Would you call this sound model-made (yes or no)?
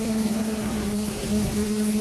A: yes